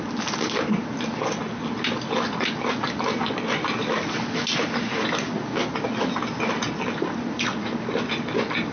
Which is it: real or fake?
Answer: real